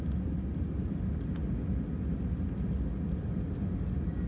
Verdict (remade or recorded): recorded